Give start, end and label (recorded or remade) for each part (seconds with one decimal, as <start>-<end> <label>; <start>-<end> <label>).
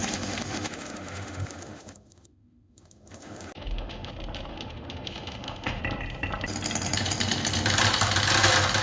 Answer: 0.0-4.1 remade; 4.1-4.5 recorded; 4.5-5.8 remade; 5.8-8.8 recorded